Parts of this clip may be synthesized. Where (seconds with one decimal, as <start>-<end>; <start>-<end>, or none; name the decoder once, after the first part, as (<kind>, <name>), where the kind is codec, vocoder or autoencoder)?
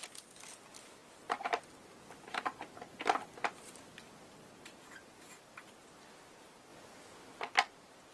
none